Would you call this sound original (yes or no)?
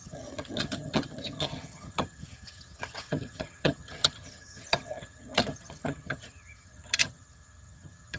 no